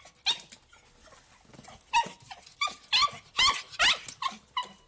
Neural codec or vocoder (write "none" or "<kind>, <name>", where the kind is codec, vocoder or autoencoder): none